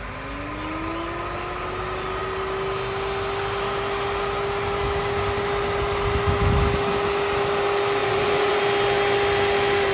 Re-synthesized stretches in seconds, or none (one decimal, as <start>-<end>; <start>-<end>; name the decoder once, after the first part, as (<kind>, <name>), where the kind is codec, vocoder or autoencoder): 8.0-8.6 (vocoder, Vocos)